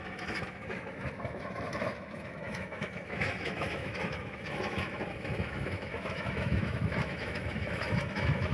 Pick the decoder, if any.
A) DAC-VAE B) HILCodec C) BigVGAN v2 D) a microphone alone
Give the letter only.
A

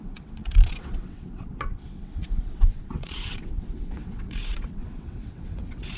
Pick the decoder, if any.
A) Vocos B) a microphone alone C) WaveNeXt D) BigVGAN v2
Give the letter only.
C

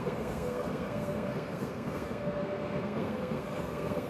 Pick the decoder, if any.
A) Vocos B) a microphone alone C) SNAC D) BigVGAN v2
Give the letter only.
C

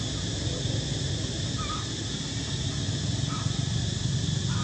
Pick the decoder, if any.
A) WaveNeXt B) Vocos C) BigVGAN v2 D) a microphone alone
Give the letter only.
D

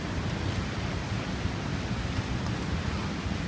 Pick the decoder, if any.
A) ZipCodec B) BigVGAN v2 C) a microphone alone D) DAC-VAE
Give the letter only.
C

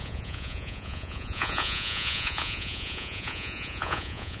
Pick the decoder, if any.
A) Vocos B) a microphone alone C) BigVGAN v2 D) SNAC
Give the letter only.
A